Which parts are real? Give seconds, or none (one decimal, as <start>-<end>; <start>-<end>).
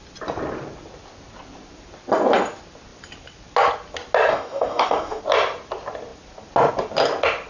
0.0-4.3; 5.2-7.5